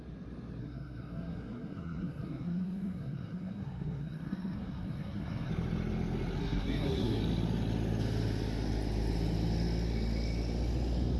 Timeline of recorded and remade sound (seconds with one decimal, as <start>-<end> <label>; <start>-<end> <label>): 0.0-0.6 recorded; 0.6-5.5 remade; 5.5-6.4 recorded; 6.4-7.2 remade; 7.2-11.2 recorded